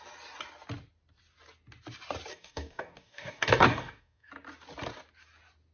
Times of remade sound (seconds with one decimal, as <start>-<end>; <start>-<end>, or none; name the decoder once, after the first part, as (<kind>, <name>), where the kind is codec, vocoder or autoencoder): 2.3-4.3 (codec, DAC)